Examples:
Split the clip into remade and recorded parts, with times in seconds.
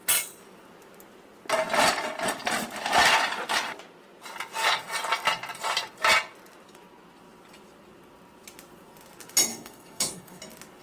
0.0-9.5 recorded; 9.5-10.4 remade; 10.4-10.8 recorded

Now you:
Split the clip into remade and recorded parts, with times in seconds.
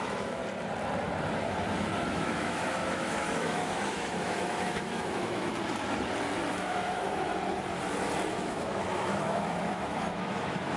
0.0-0.4 remade; 0.4-2.1 recorded; 2.1-5.5 remade; 5.5-6.5 recorded; 6.5-7.3 remade; 7.3-8.3 recorded; 8.3-10.8 remade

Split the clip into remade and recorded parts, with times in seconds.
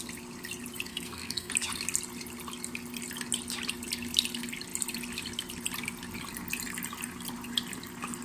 0.0-0.9 recorded; 0.9-1.5 remade; 1.5-8.2 recorded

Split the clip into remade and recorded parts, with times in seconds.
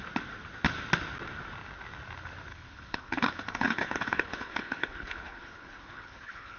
0.0-2.5 recorded; 2.5-6.6 remade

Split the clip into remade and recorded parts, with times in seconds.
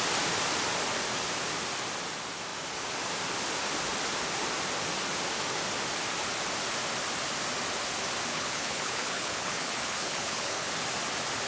0.0-8.3 recorded; 8.3-10.7 remade; 10.7-11.5 recorded